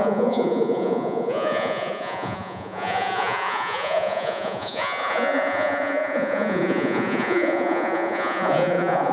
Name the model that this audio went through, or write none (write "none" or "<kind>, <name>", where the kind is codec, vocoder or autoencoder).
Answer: vocoder, Vocos